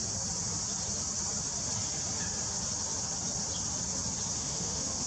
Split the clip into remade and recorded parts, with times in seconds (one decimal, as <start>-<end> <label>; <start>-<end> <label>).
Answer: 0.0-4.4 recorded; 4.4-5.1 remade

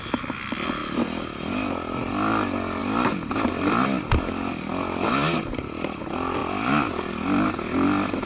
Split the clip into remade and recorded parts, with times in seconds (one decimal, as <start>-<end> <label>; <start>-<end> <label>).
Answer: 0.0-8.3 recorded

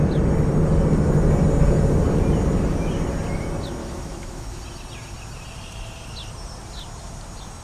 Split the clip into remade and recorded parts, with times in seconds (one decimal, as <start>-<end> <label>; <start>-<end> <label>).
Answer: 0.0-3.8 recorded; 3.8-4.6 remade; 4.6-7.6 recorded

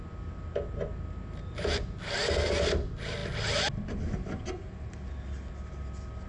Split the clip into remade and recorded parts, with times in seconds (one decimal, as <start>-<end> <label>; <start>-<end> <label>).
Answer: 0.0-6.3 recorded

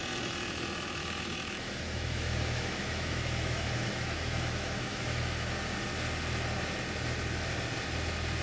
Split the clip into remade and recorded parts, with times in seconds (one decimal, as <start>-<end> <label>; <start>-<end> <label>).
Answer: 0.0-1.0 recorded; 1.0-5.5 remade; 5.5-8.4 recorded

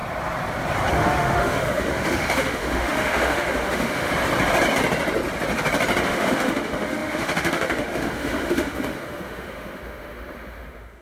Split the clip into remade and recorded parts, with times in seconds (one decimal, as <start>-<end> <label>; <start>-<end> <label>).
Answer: 0.0-0.9 recorded; 0.9-4.1 remade; 4.1-6.0 recorded; 6.0-11.0 remade

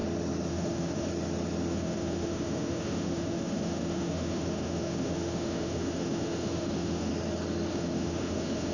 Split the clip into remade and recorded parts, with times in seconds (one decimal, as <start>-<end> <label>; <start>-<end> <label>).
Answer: 0.0-0.5 recorded; 0.5-1.1 remade; 1.1-1.7 recorded; 1.7-7.1 remade; 7.1-7.7 recorded; 7.7-8.7 remade

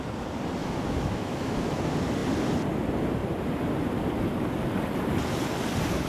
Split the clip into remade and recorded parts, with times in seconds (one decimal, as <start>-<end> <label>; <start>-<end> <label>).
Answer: 0.0-0.6 recorded; 0.6-1.8 remade; 1.8-6.1 recorded